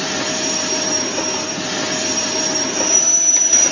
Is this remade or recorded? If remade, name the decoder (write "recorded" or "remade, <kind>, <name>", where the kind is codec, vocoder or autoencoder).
remade, vocoder, BigVGAN v2